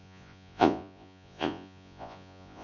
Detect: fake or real fake